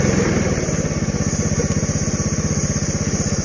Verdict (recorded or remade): recorded